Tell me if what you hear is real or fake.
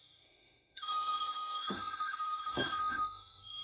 fake